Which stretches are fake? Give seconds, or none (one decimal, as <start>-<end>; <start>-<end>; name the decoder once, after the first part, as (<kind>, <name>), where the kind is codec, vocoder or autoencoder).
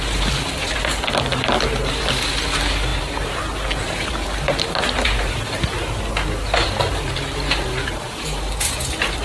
none